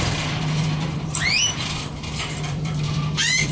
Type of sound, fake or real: fake